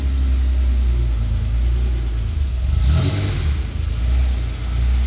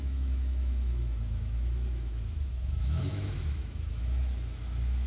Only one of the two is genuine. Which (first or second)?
first